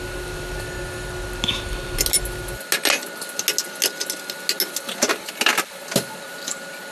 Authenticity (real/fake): real